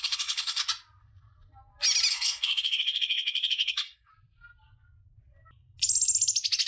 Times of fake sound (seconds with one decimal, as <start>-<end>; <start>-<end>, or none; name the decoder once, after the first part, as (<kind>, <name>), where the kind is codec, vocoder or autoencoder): 0.0-0.6 (codec, SNAC); 2.1-4.1